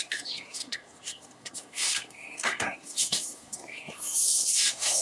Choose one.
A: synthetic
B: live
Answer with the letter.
A